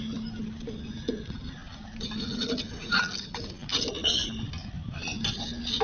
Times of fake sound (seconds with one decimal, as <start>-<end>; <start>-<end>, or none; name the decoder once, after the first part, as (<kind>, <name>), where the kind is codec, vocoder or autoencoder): none